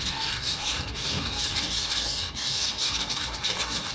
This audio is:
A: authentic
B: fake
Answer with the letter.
B